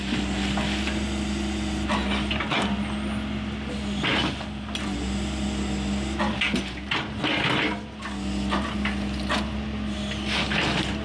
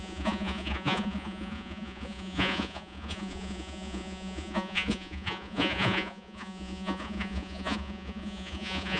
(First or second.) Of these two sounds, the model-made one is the second